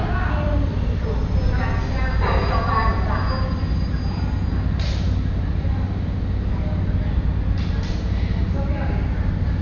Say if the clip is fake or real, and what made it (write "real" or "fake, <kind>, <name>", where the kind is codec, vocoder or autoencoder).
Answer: real